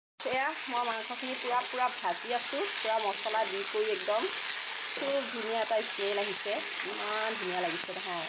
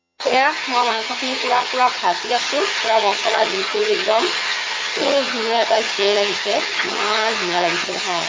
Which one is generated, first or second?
second